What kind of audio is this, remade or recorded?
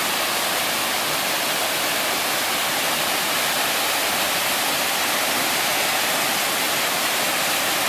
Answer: recorded